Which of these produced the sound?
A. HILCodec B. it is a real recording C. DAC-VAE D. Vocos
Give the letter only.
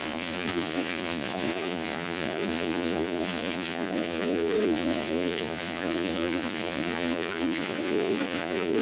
D